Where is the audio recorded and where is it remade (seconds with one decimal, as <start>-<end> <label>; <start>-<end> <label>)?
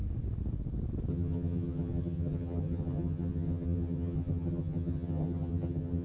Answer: 0.0-1.1 recorded; 1.1-6.0 remade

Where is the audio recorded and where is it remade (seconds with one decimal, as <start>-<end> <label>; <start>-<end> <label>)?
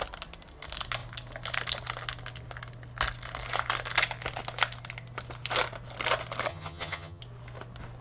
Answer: 0.0-6.5 recorded; 6.5-7.2 remade; 7.2-8.0 recorded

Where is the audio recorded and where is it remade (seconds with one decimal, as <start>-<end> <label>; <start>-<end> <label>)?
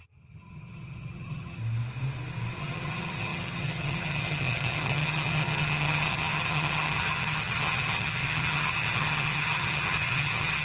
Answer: 0.0-1.6 remade; 1.6-2.6 recorded; 2.6-10.6 remade